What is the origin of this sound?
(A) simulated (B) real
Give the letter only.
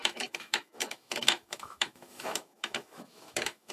A